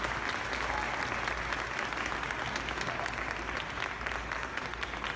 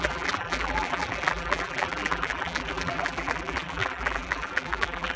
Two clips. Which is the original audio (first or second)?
first